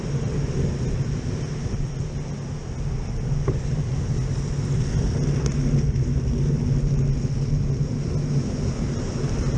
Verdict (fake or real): real